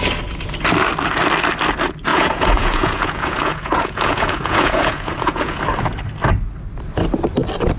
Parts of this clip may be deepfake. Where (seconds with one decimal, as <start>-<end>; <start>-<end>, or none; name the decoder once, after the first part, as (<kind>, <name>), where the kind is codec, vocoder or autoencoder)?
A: 2.1-5.6 (vocoder, Vocos)